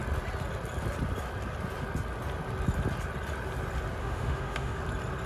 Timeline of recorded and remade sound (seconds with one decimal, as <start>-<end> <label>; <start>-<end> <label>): 0.0-4.0 recorded; 4.0-4.8 remade; 4.8-5.3 recorded